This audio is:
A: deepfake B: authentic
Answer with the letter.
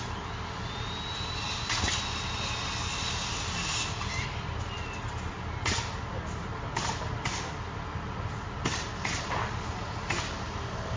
B